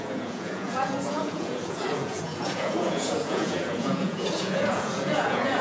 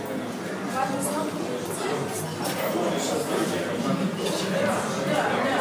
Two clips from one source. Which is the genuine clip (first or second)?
second